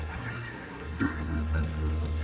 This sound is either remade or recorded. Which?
remade